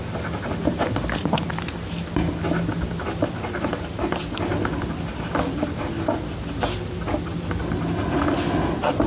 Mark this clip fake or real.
real